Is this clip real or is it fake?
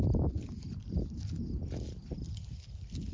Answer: real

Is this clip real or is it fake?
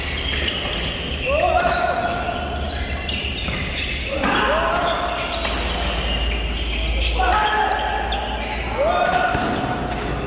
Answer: real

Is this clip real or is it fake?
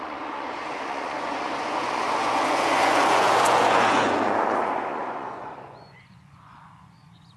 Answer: fake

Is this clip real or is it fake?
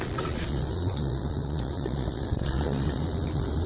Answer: fake